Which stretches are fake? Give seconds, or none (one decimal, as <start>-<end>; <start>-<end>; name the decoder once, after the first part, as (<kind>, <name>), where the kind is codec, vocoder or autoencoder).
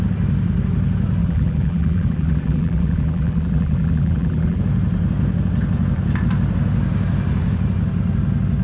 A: 1.2-4.6 (vocoder, BigVGAN v2)